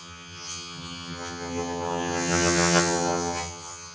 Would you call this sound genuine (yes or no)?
no